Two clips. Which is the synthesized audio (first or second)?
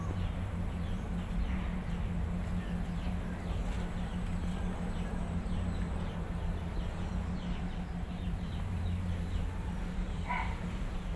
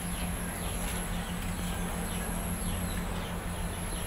first